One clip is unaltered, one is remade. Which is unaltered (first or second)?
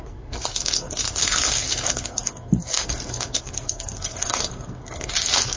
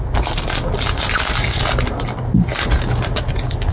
second